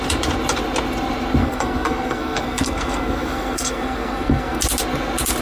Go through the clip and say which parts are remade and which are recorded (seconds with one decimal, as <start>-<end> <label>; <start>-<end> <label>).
0.0-1.4 recorded; 1.4-4.6 remade; 4.6-5.4 recorded